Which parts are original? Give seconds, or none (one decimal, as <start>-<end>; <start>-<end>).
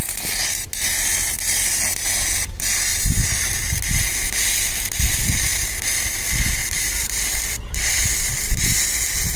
0.0-2.9; 3.6-6.6; 8.6-9.4